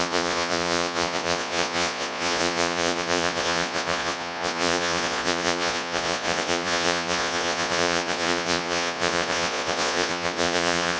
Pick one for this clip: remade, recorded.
remade